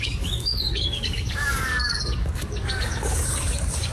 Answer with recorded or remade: remade